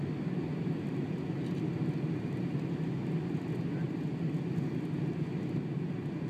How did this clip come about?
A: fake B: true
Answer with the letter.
B